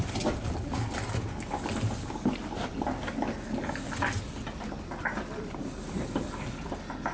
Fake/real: real